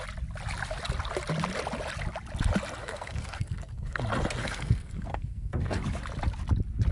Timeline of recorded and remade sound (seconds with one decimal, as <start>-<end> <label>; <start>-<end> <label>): 0.0-2.8 recorded; 2.8-4.0 remade; 4.0-4.4 recorded; 4.4-5.8 remade; 5.8-6.9 recorded